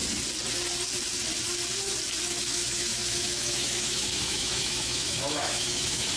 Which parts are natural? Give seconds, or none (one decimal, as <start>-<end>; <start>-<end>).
0.0-2.3